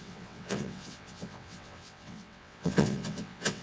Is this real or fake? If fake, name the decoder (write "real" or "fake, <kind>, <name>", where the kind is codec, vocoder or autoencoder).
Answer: fake, vocoder, WaveNeXt